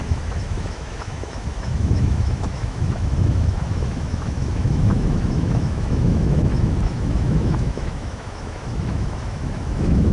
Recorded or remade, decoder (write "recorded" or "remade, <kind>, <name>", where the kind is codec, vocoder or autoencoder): remade, autoencoder, DAC-VAE